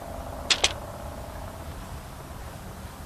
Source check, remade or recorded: recorded